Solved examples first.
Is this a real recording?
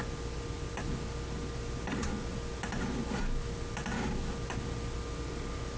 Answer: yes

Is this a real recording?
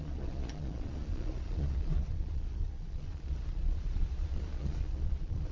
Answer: no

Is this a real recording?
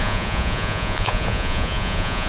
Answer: no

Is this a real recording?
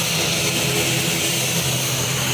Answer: yes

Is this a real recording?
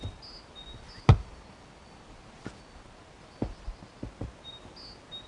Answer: yes